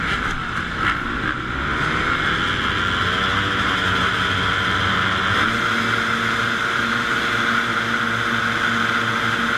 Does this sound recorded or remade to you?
recorded